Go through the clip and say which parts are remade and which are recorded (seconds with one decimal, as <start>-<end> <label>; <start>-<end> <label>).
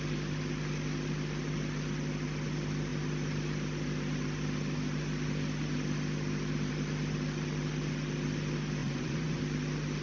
0.0-8.8 recorded; 8.8-9.4 remade; 9.4-10.0 recorded